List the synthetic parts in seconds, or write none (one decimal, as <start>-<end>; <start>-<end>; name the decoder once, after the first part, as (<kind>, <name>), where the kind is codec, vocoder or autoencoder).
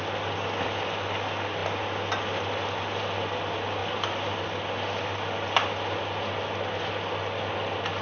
none